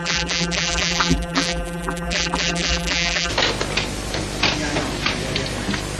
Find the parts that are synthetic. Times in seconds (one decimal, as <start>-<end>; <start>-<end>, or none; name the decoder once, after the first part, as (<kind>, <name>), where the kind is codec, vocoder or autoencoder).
0.0-3.3 (vocoder, BigVGAN v2)